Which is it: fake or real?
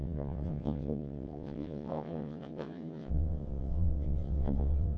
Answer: fake